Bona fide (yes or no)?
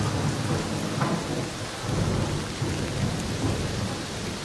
yes